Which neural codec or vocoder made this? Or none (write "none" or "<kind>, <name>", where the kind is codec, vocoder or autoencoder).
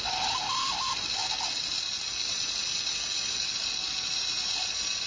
none